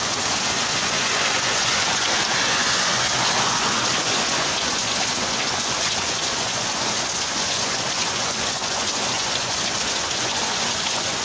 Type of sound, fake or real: fake